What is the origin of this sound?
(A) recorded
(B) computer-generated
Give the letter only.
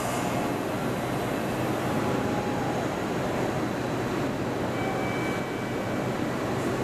A